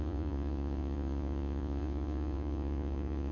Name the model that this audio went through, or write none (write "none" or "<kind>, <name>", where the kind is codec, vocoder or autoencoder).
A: vocoder, Vocos